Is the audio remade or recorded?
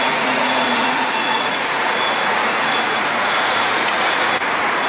remade